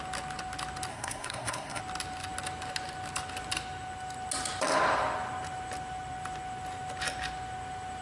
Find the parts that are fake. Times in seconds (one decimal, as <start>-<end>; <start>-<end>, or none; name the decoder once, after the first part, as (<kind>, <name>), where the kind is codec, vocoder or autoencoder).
0.9-1.8 (codec, SNAC)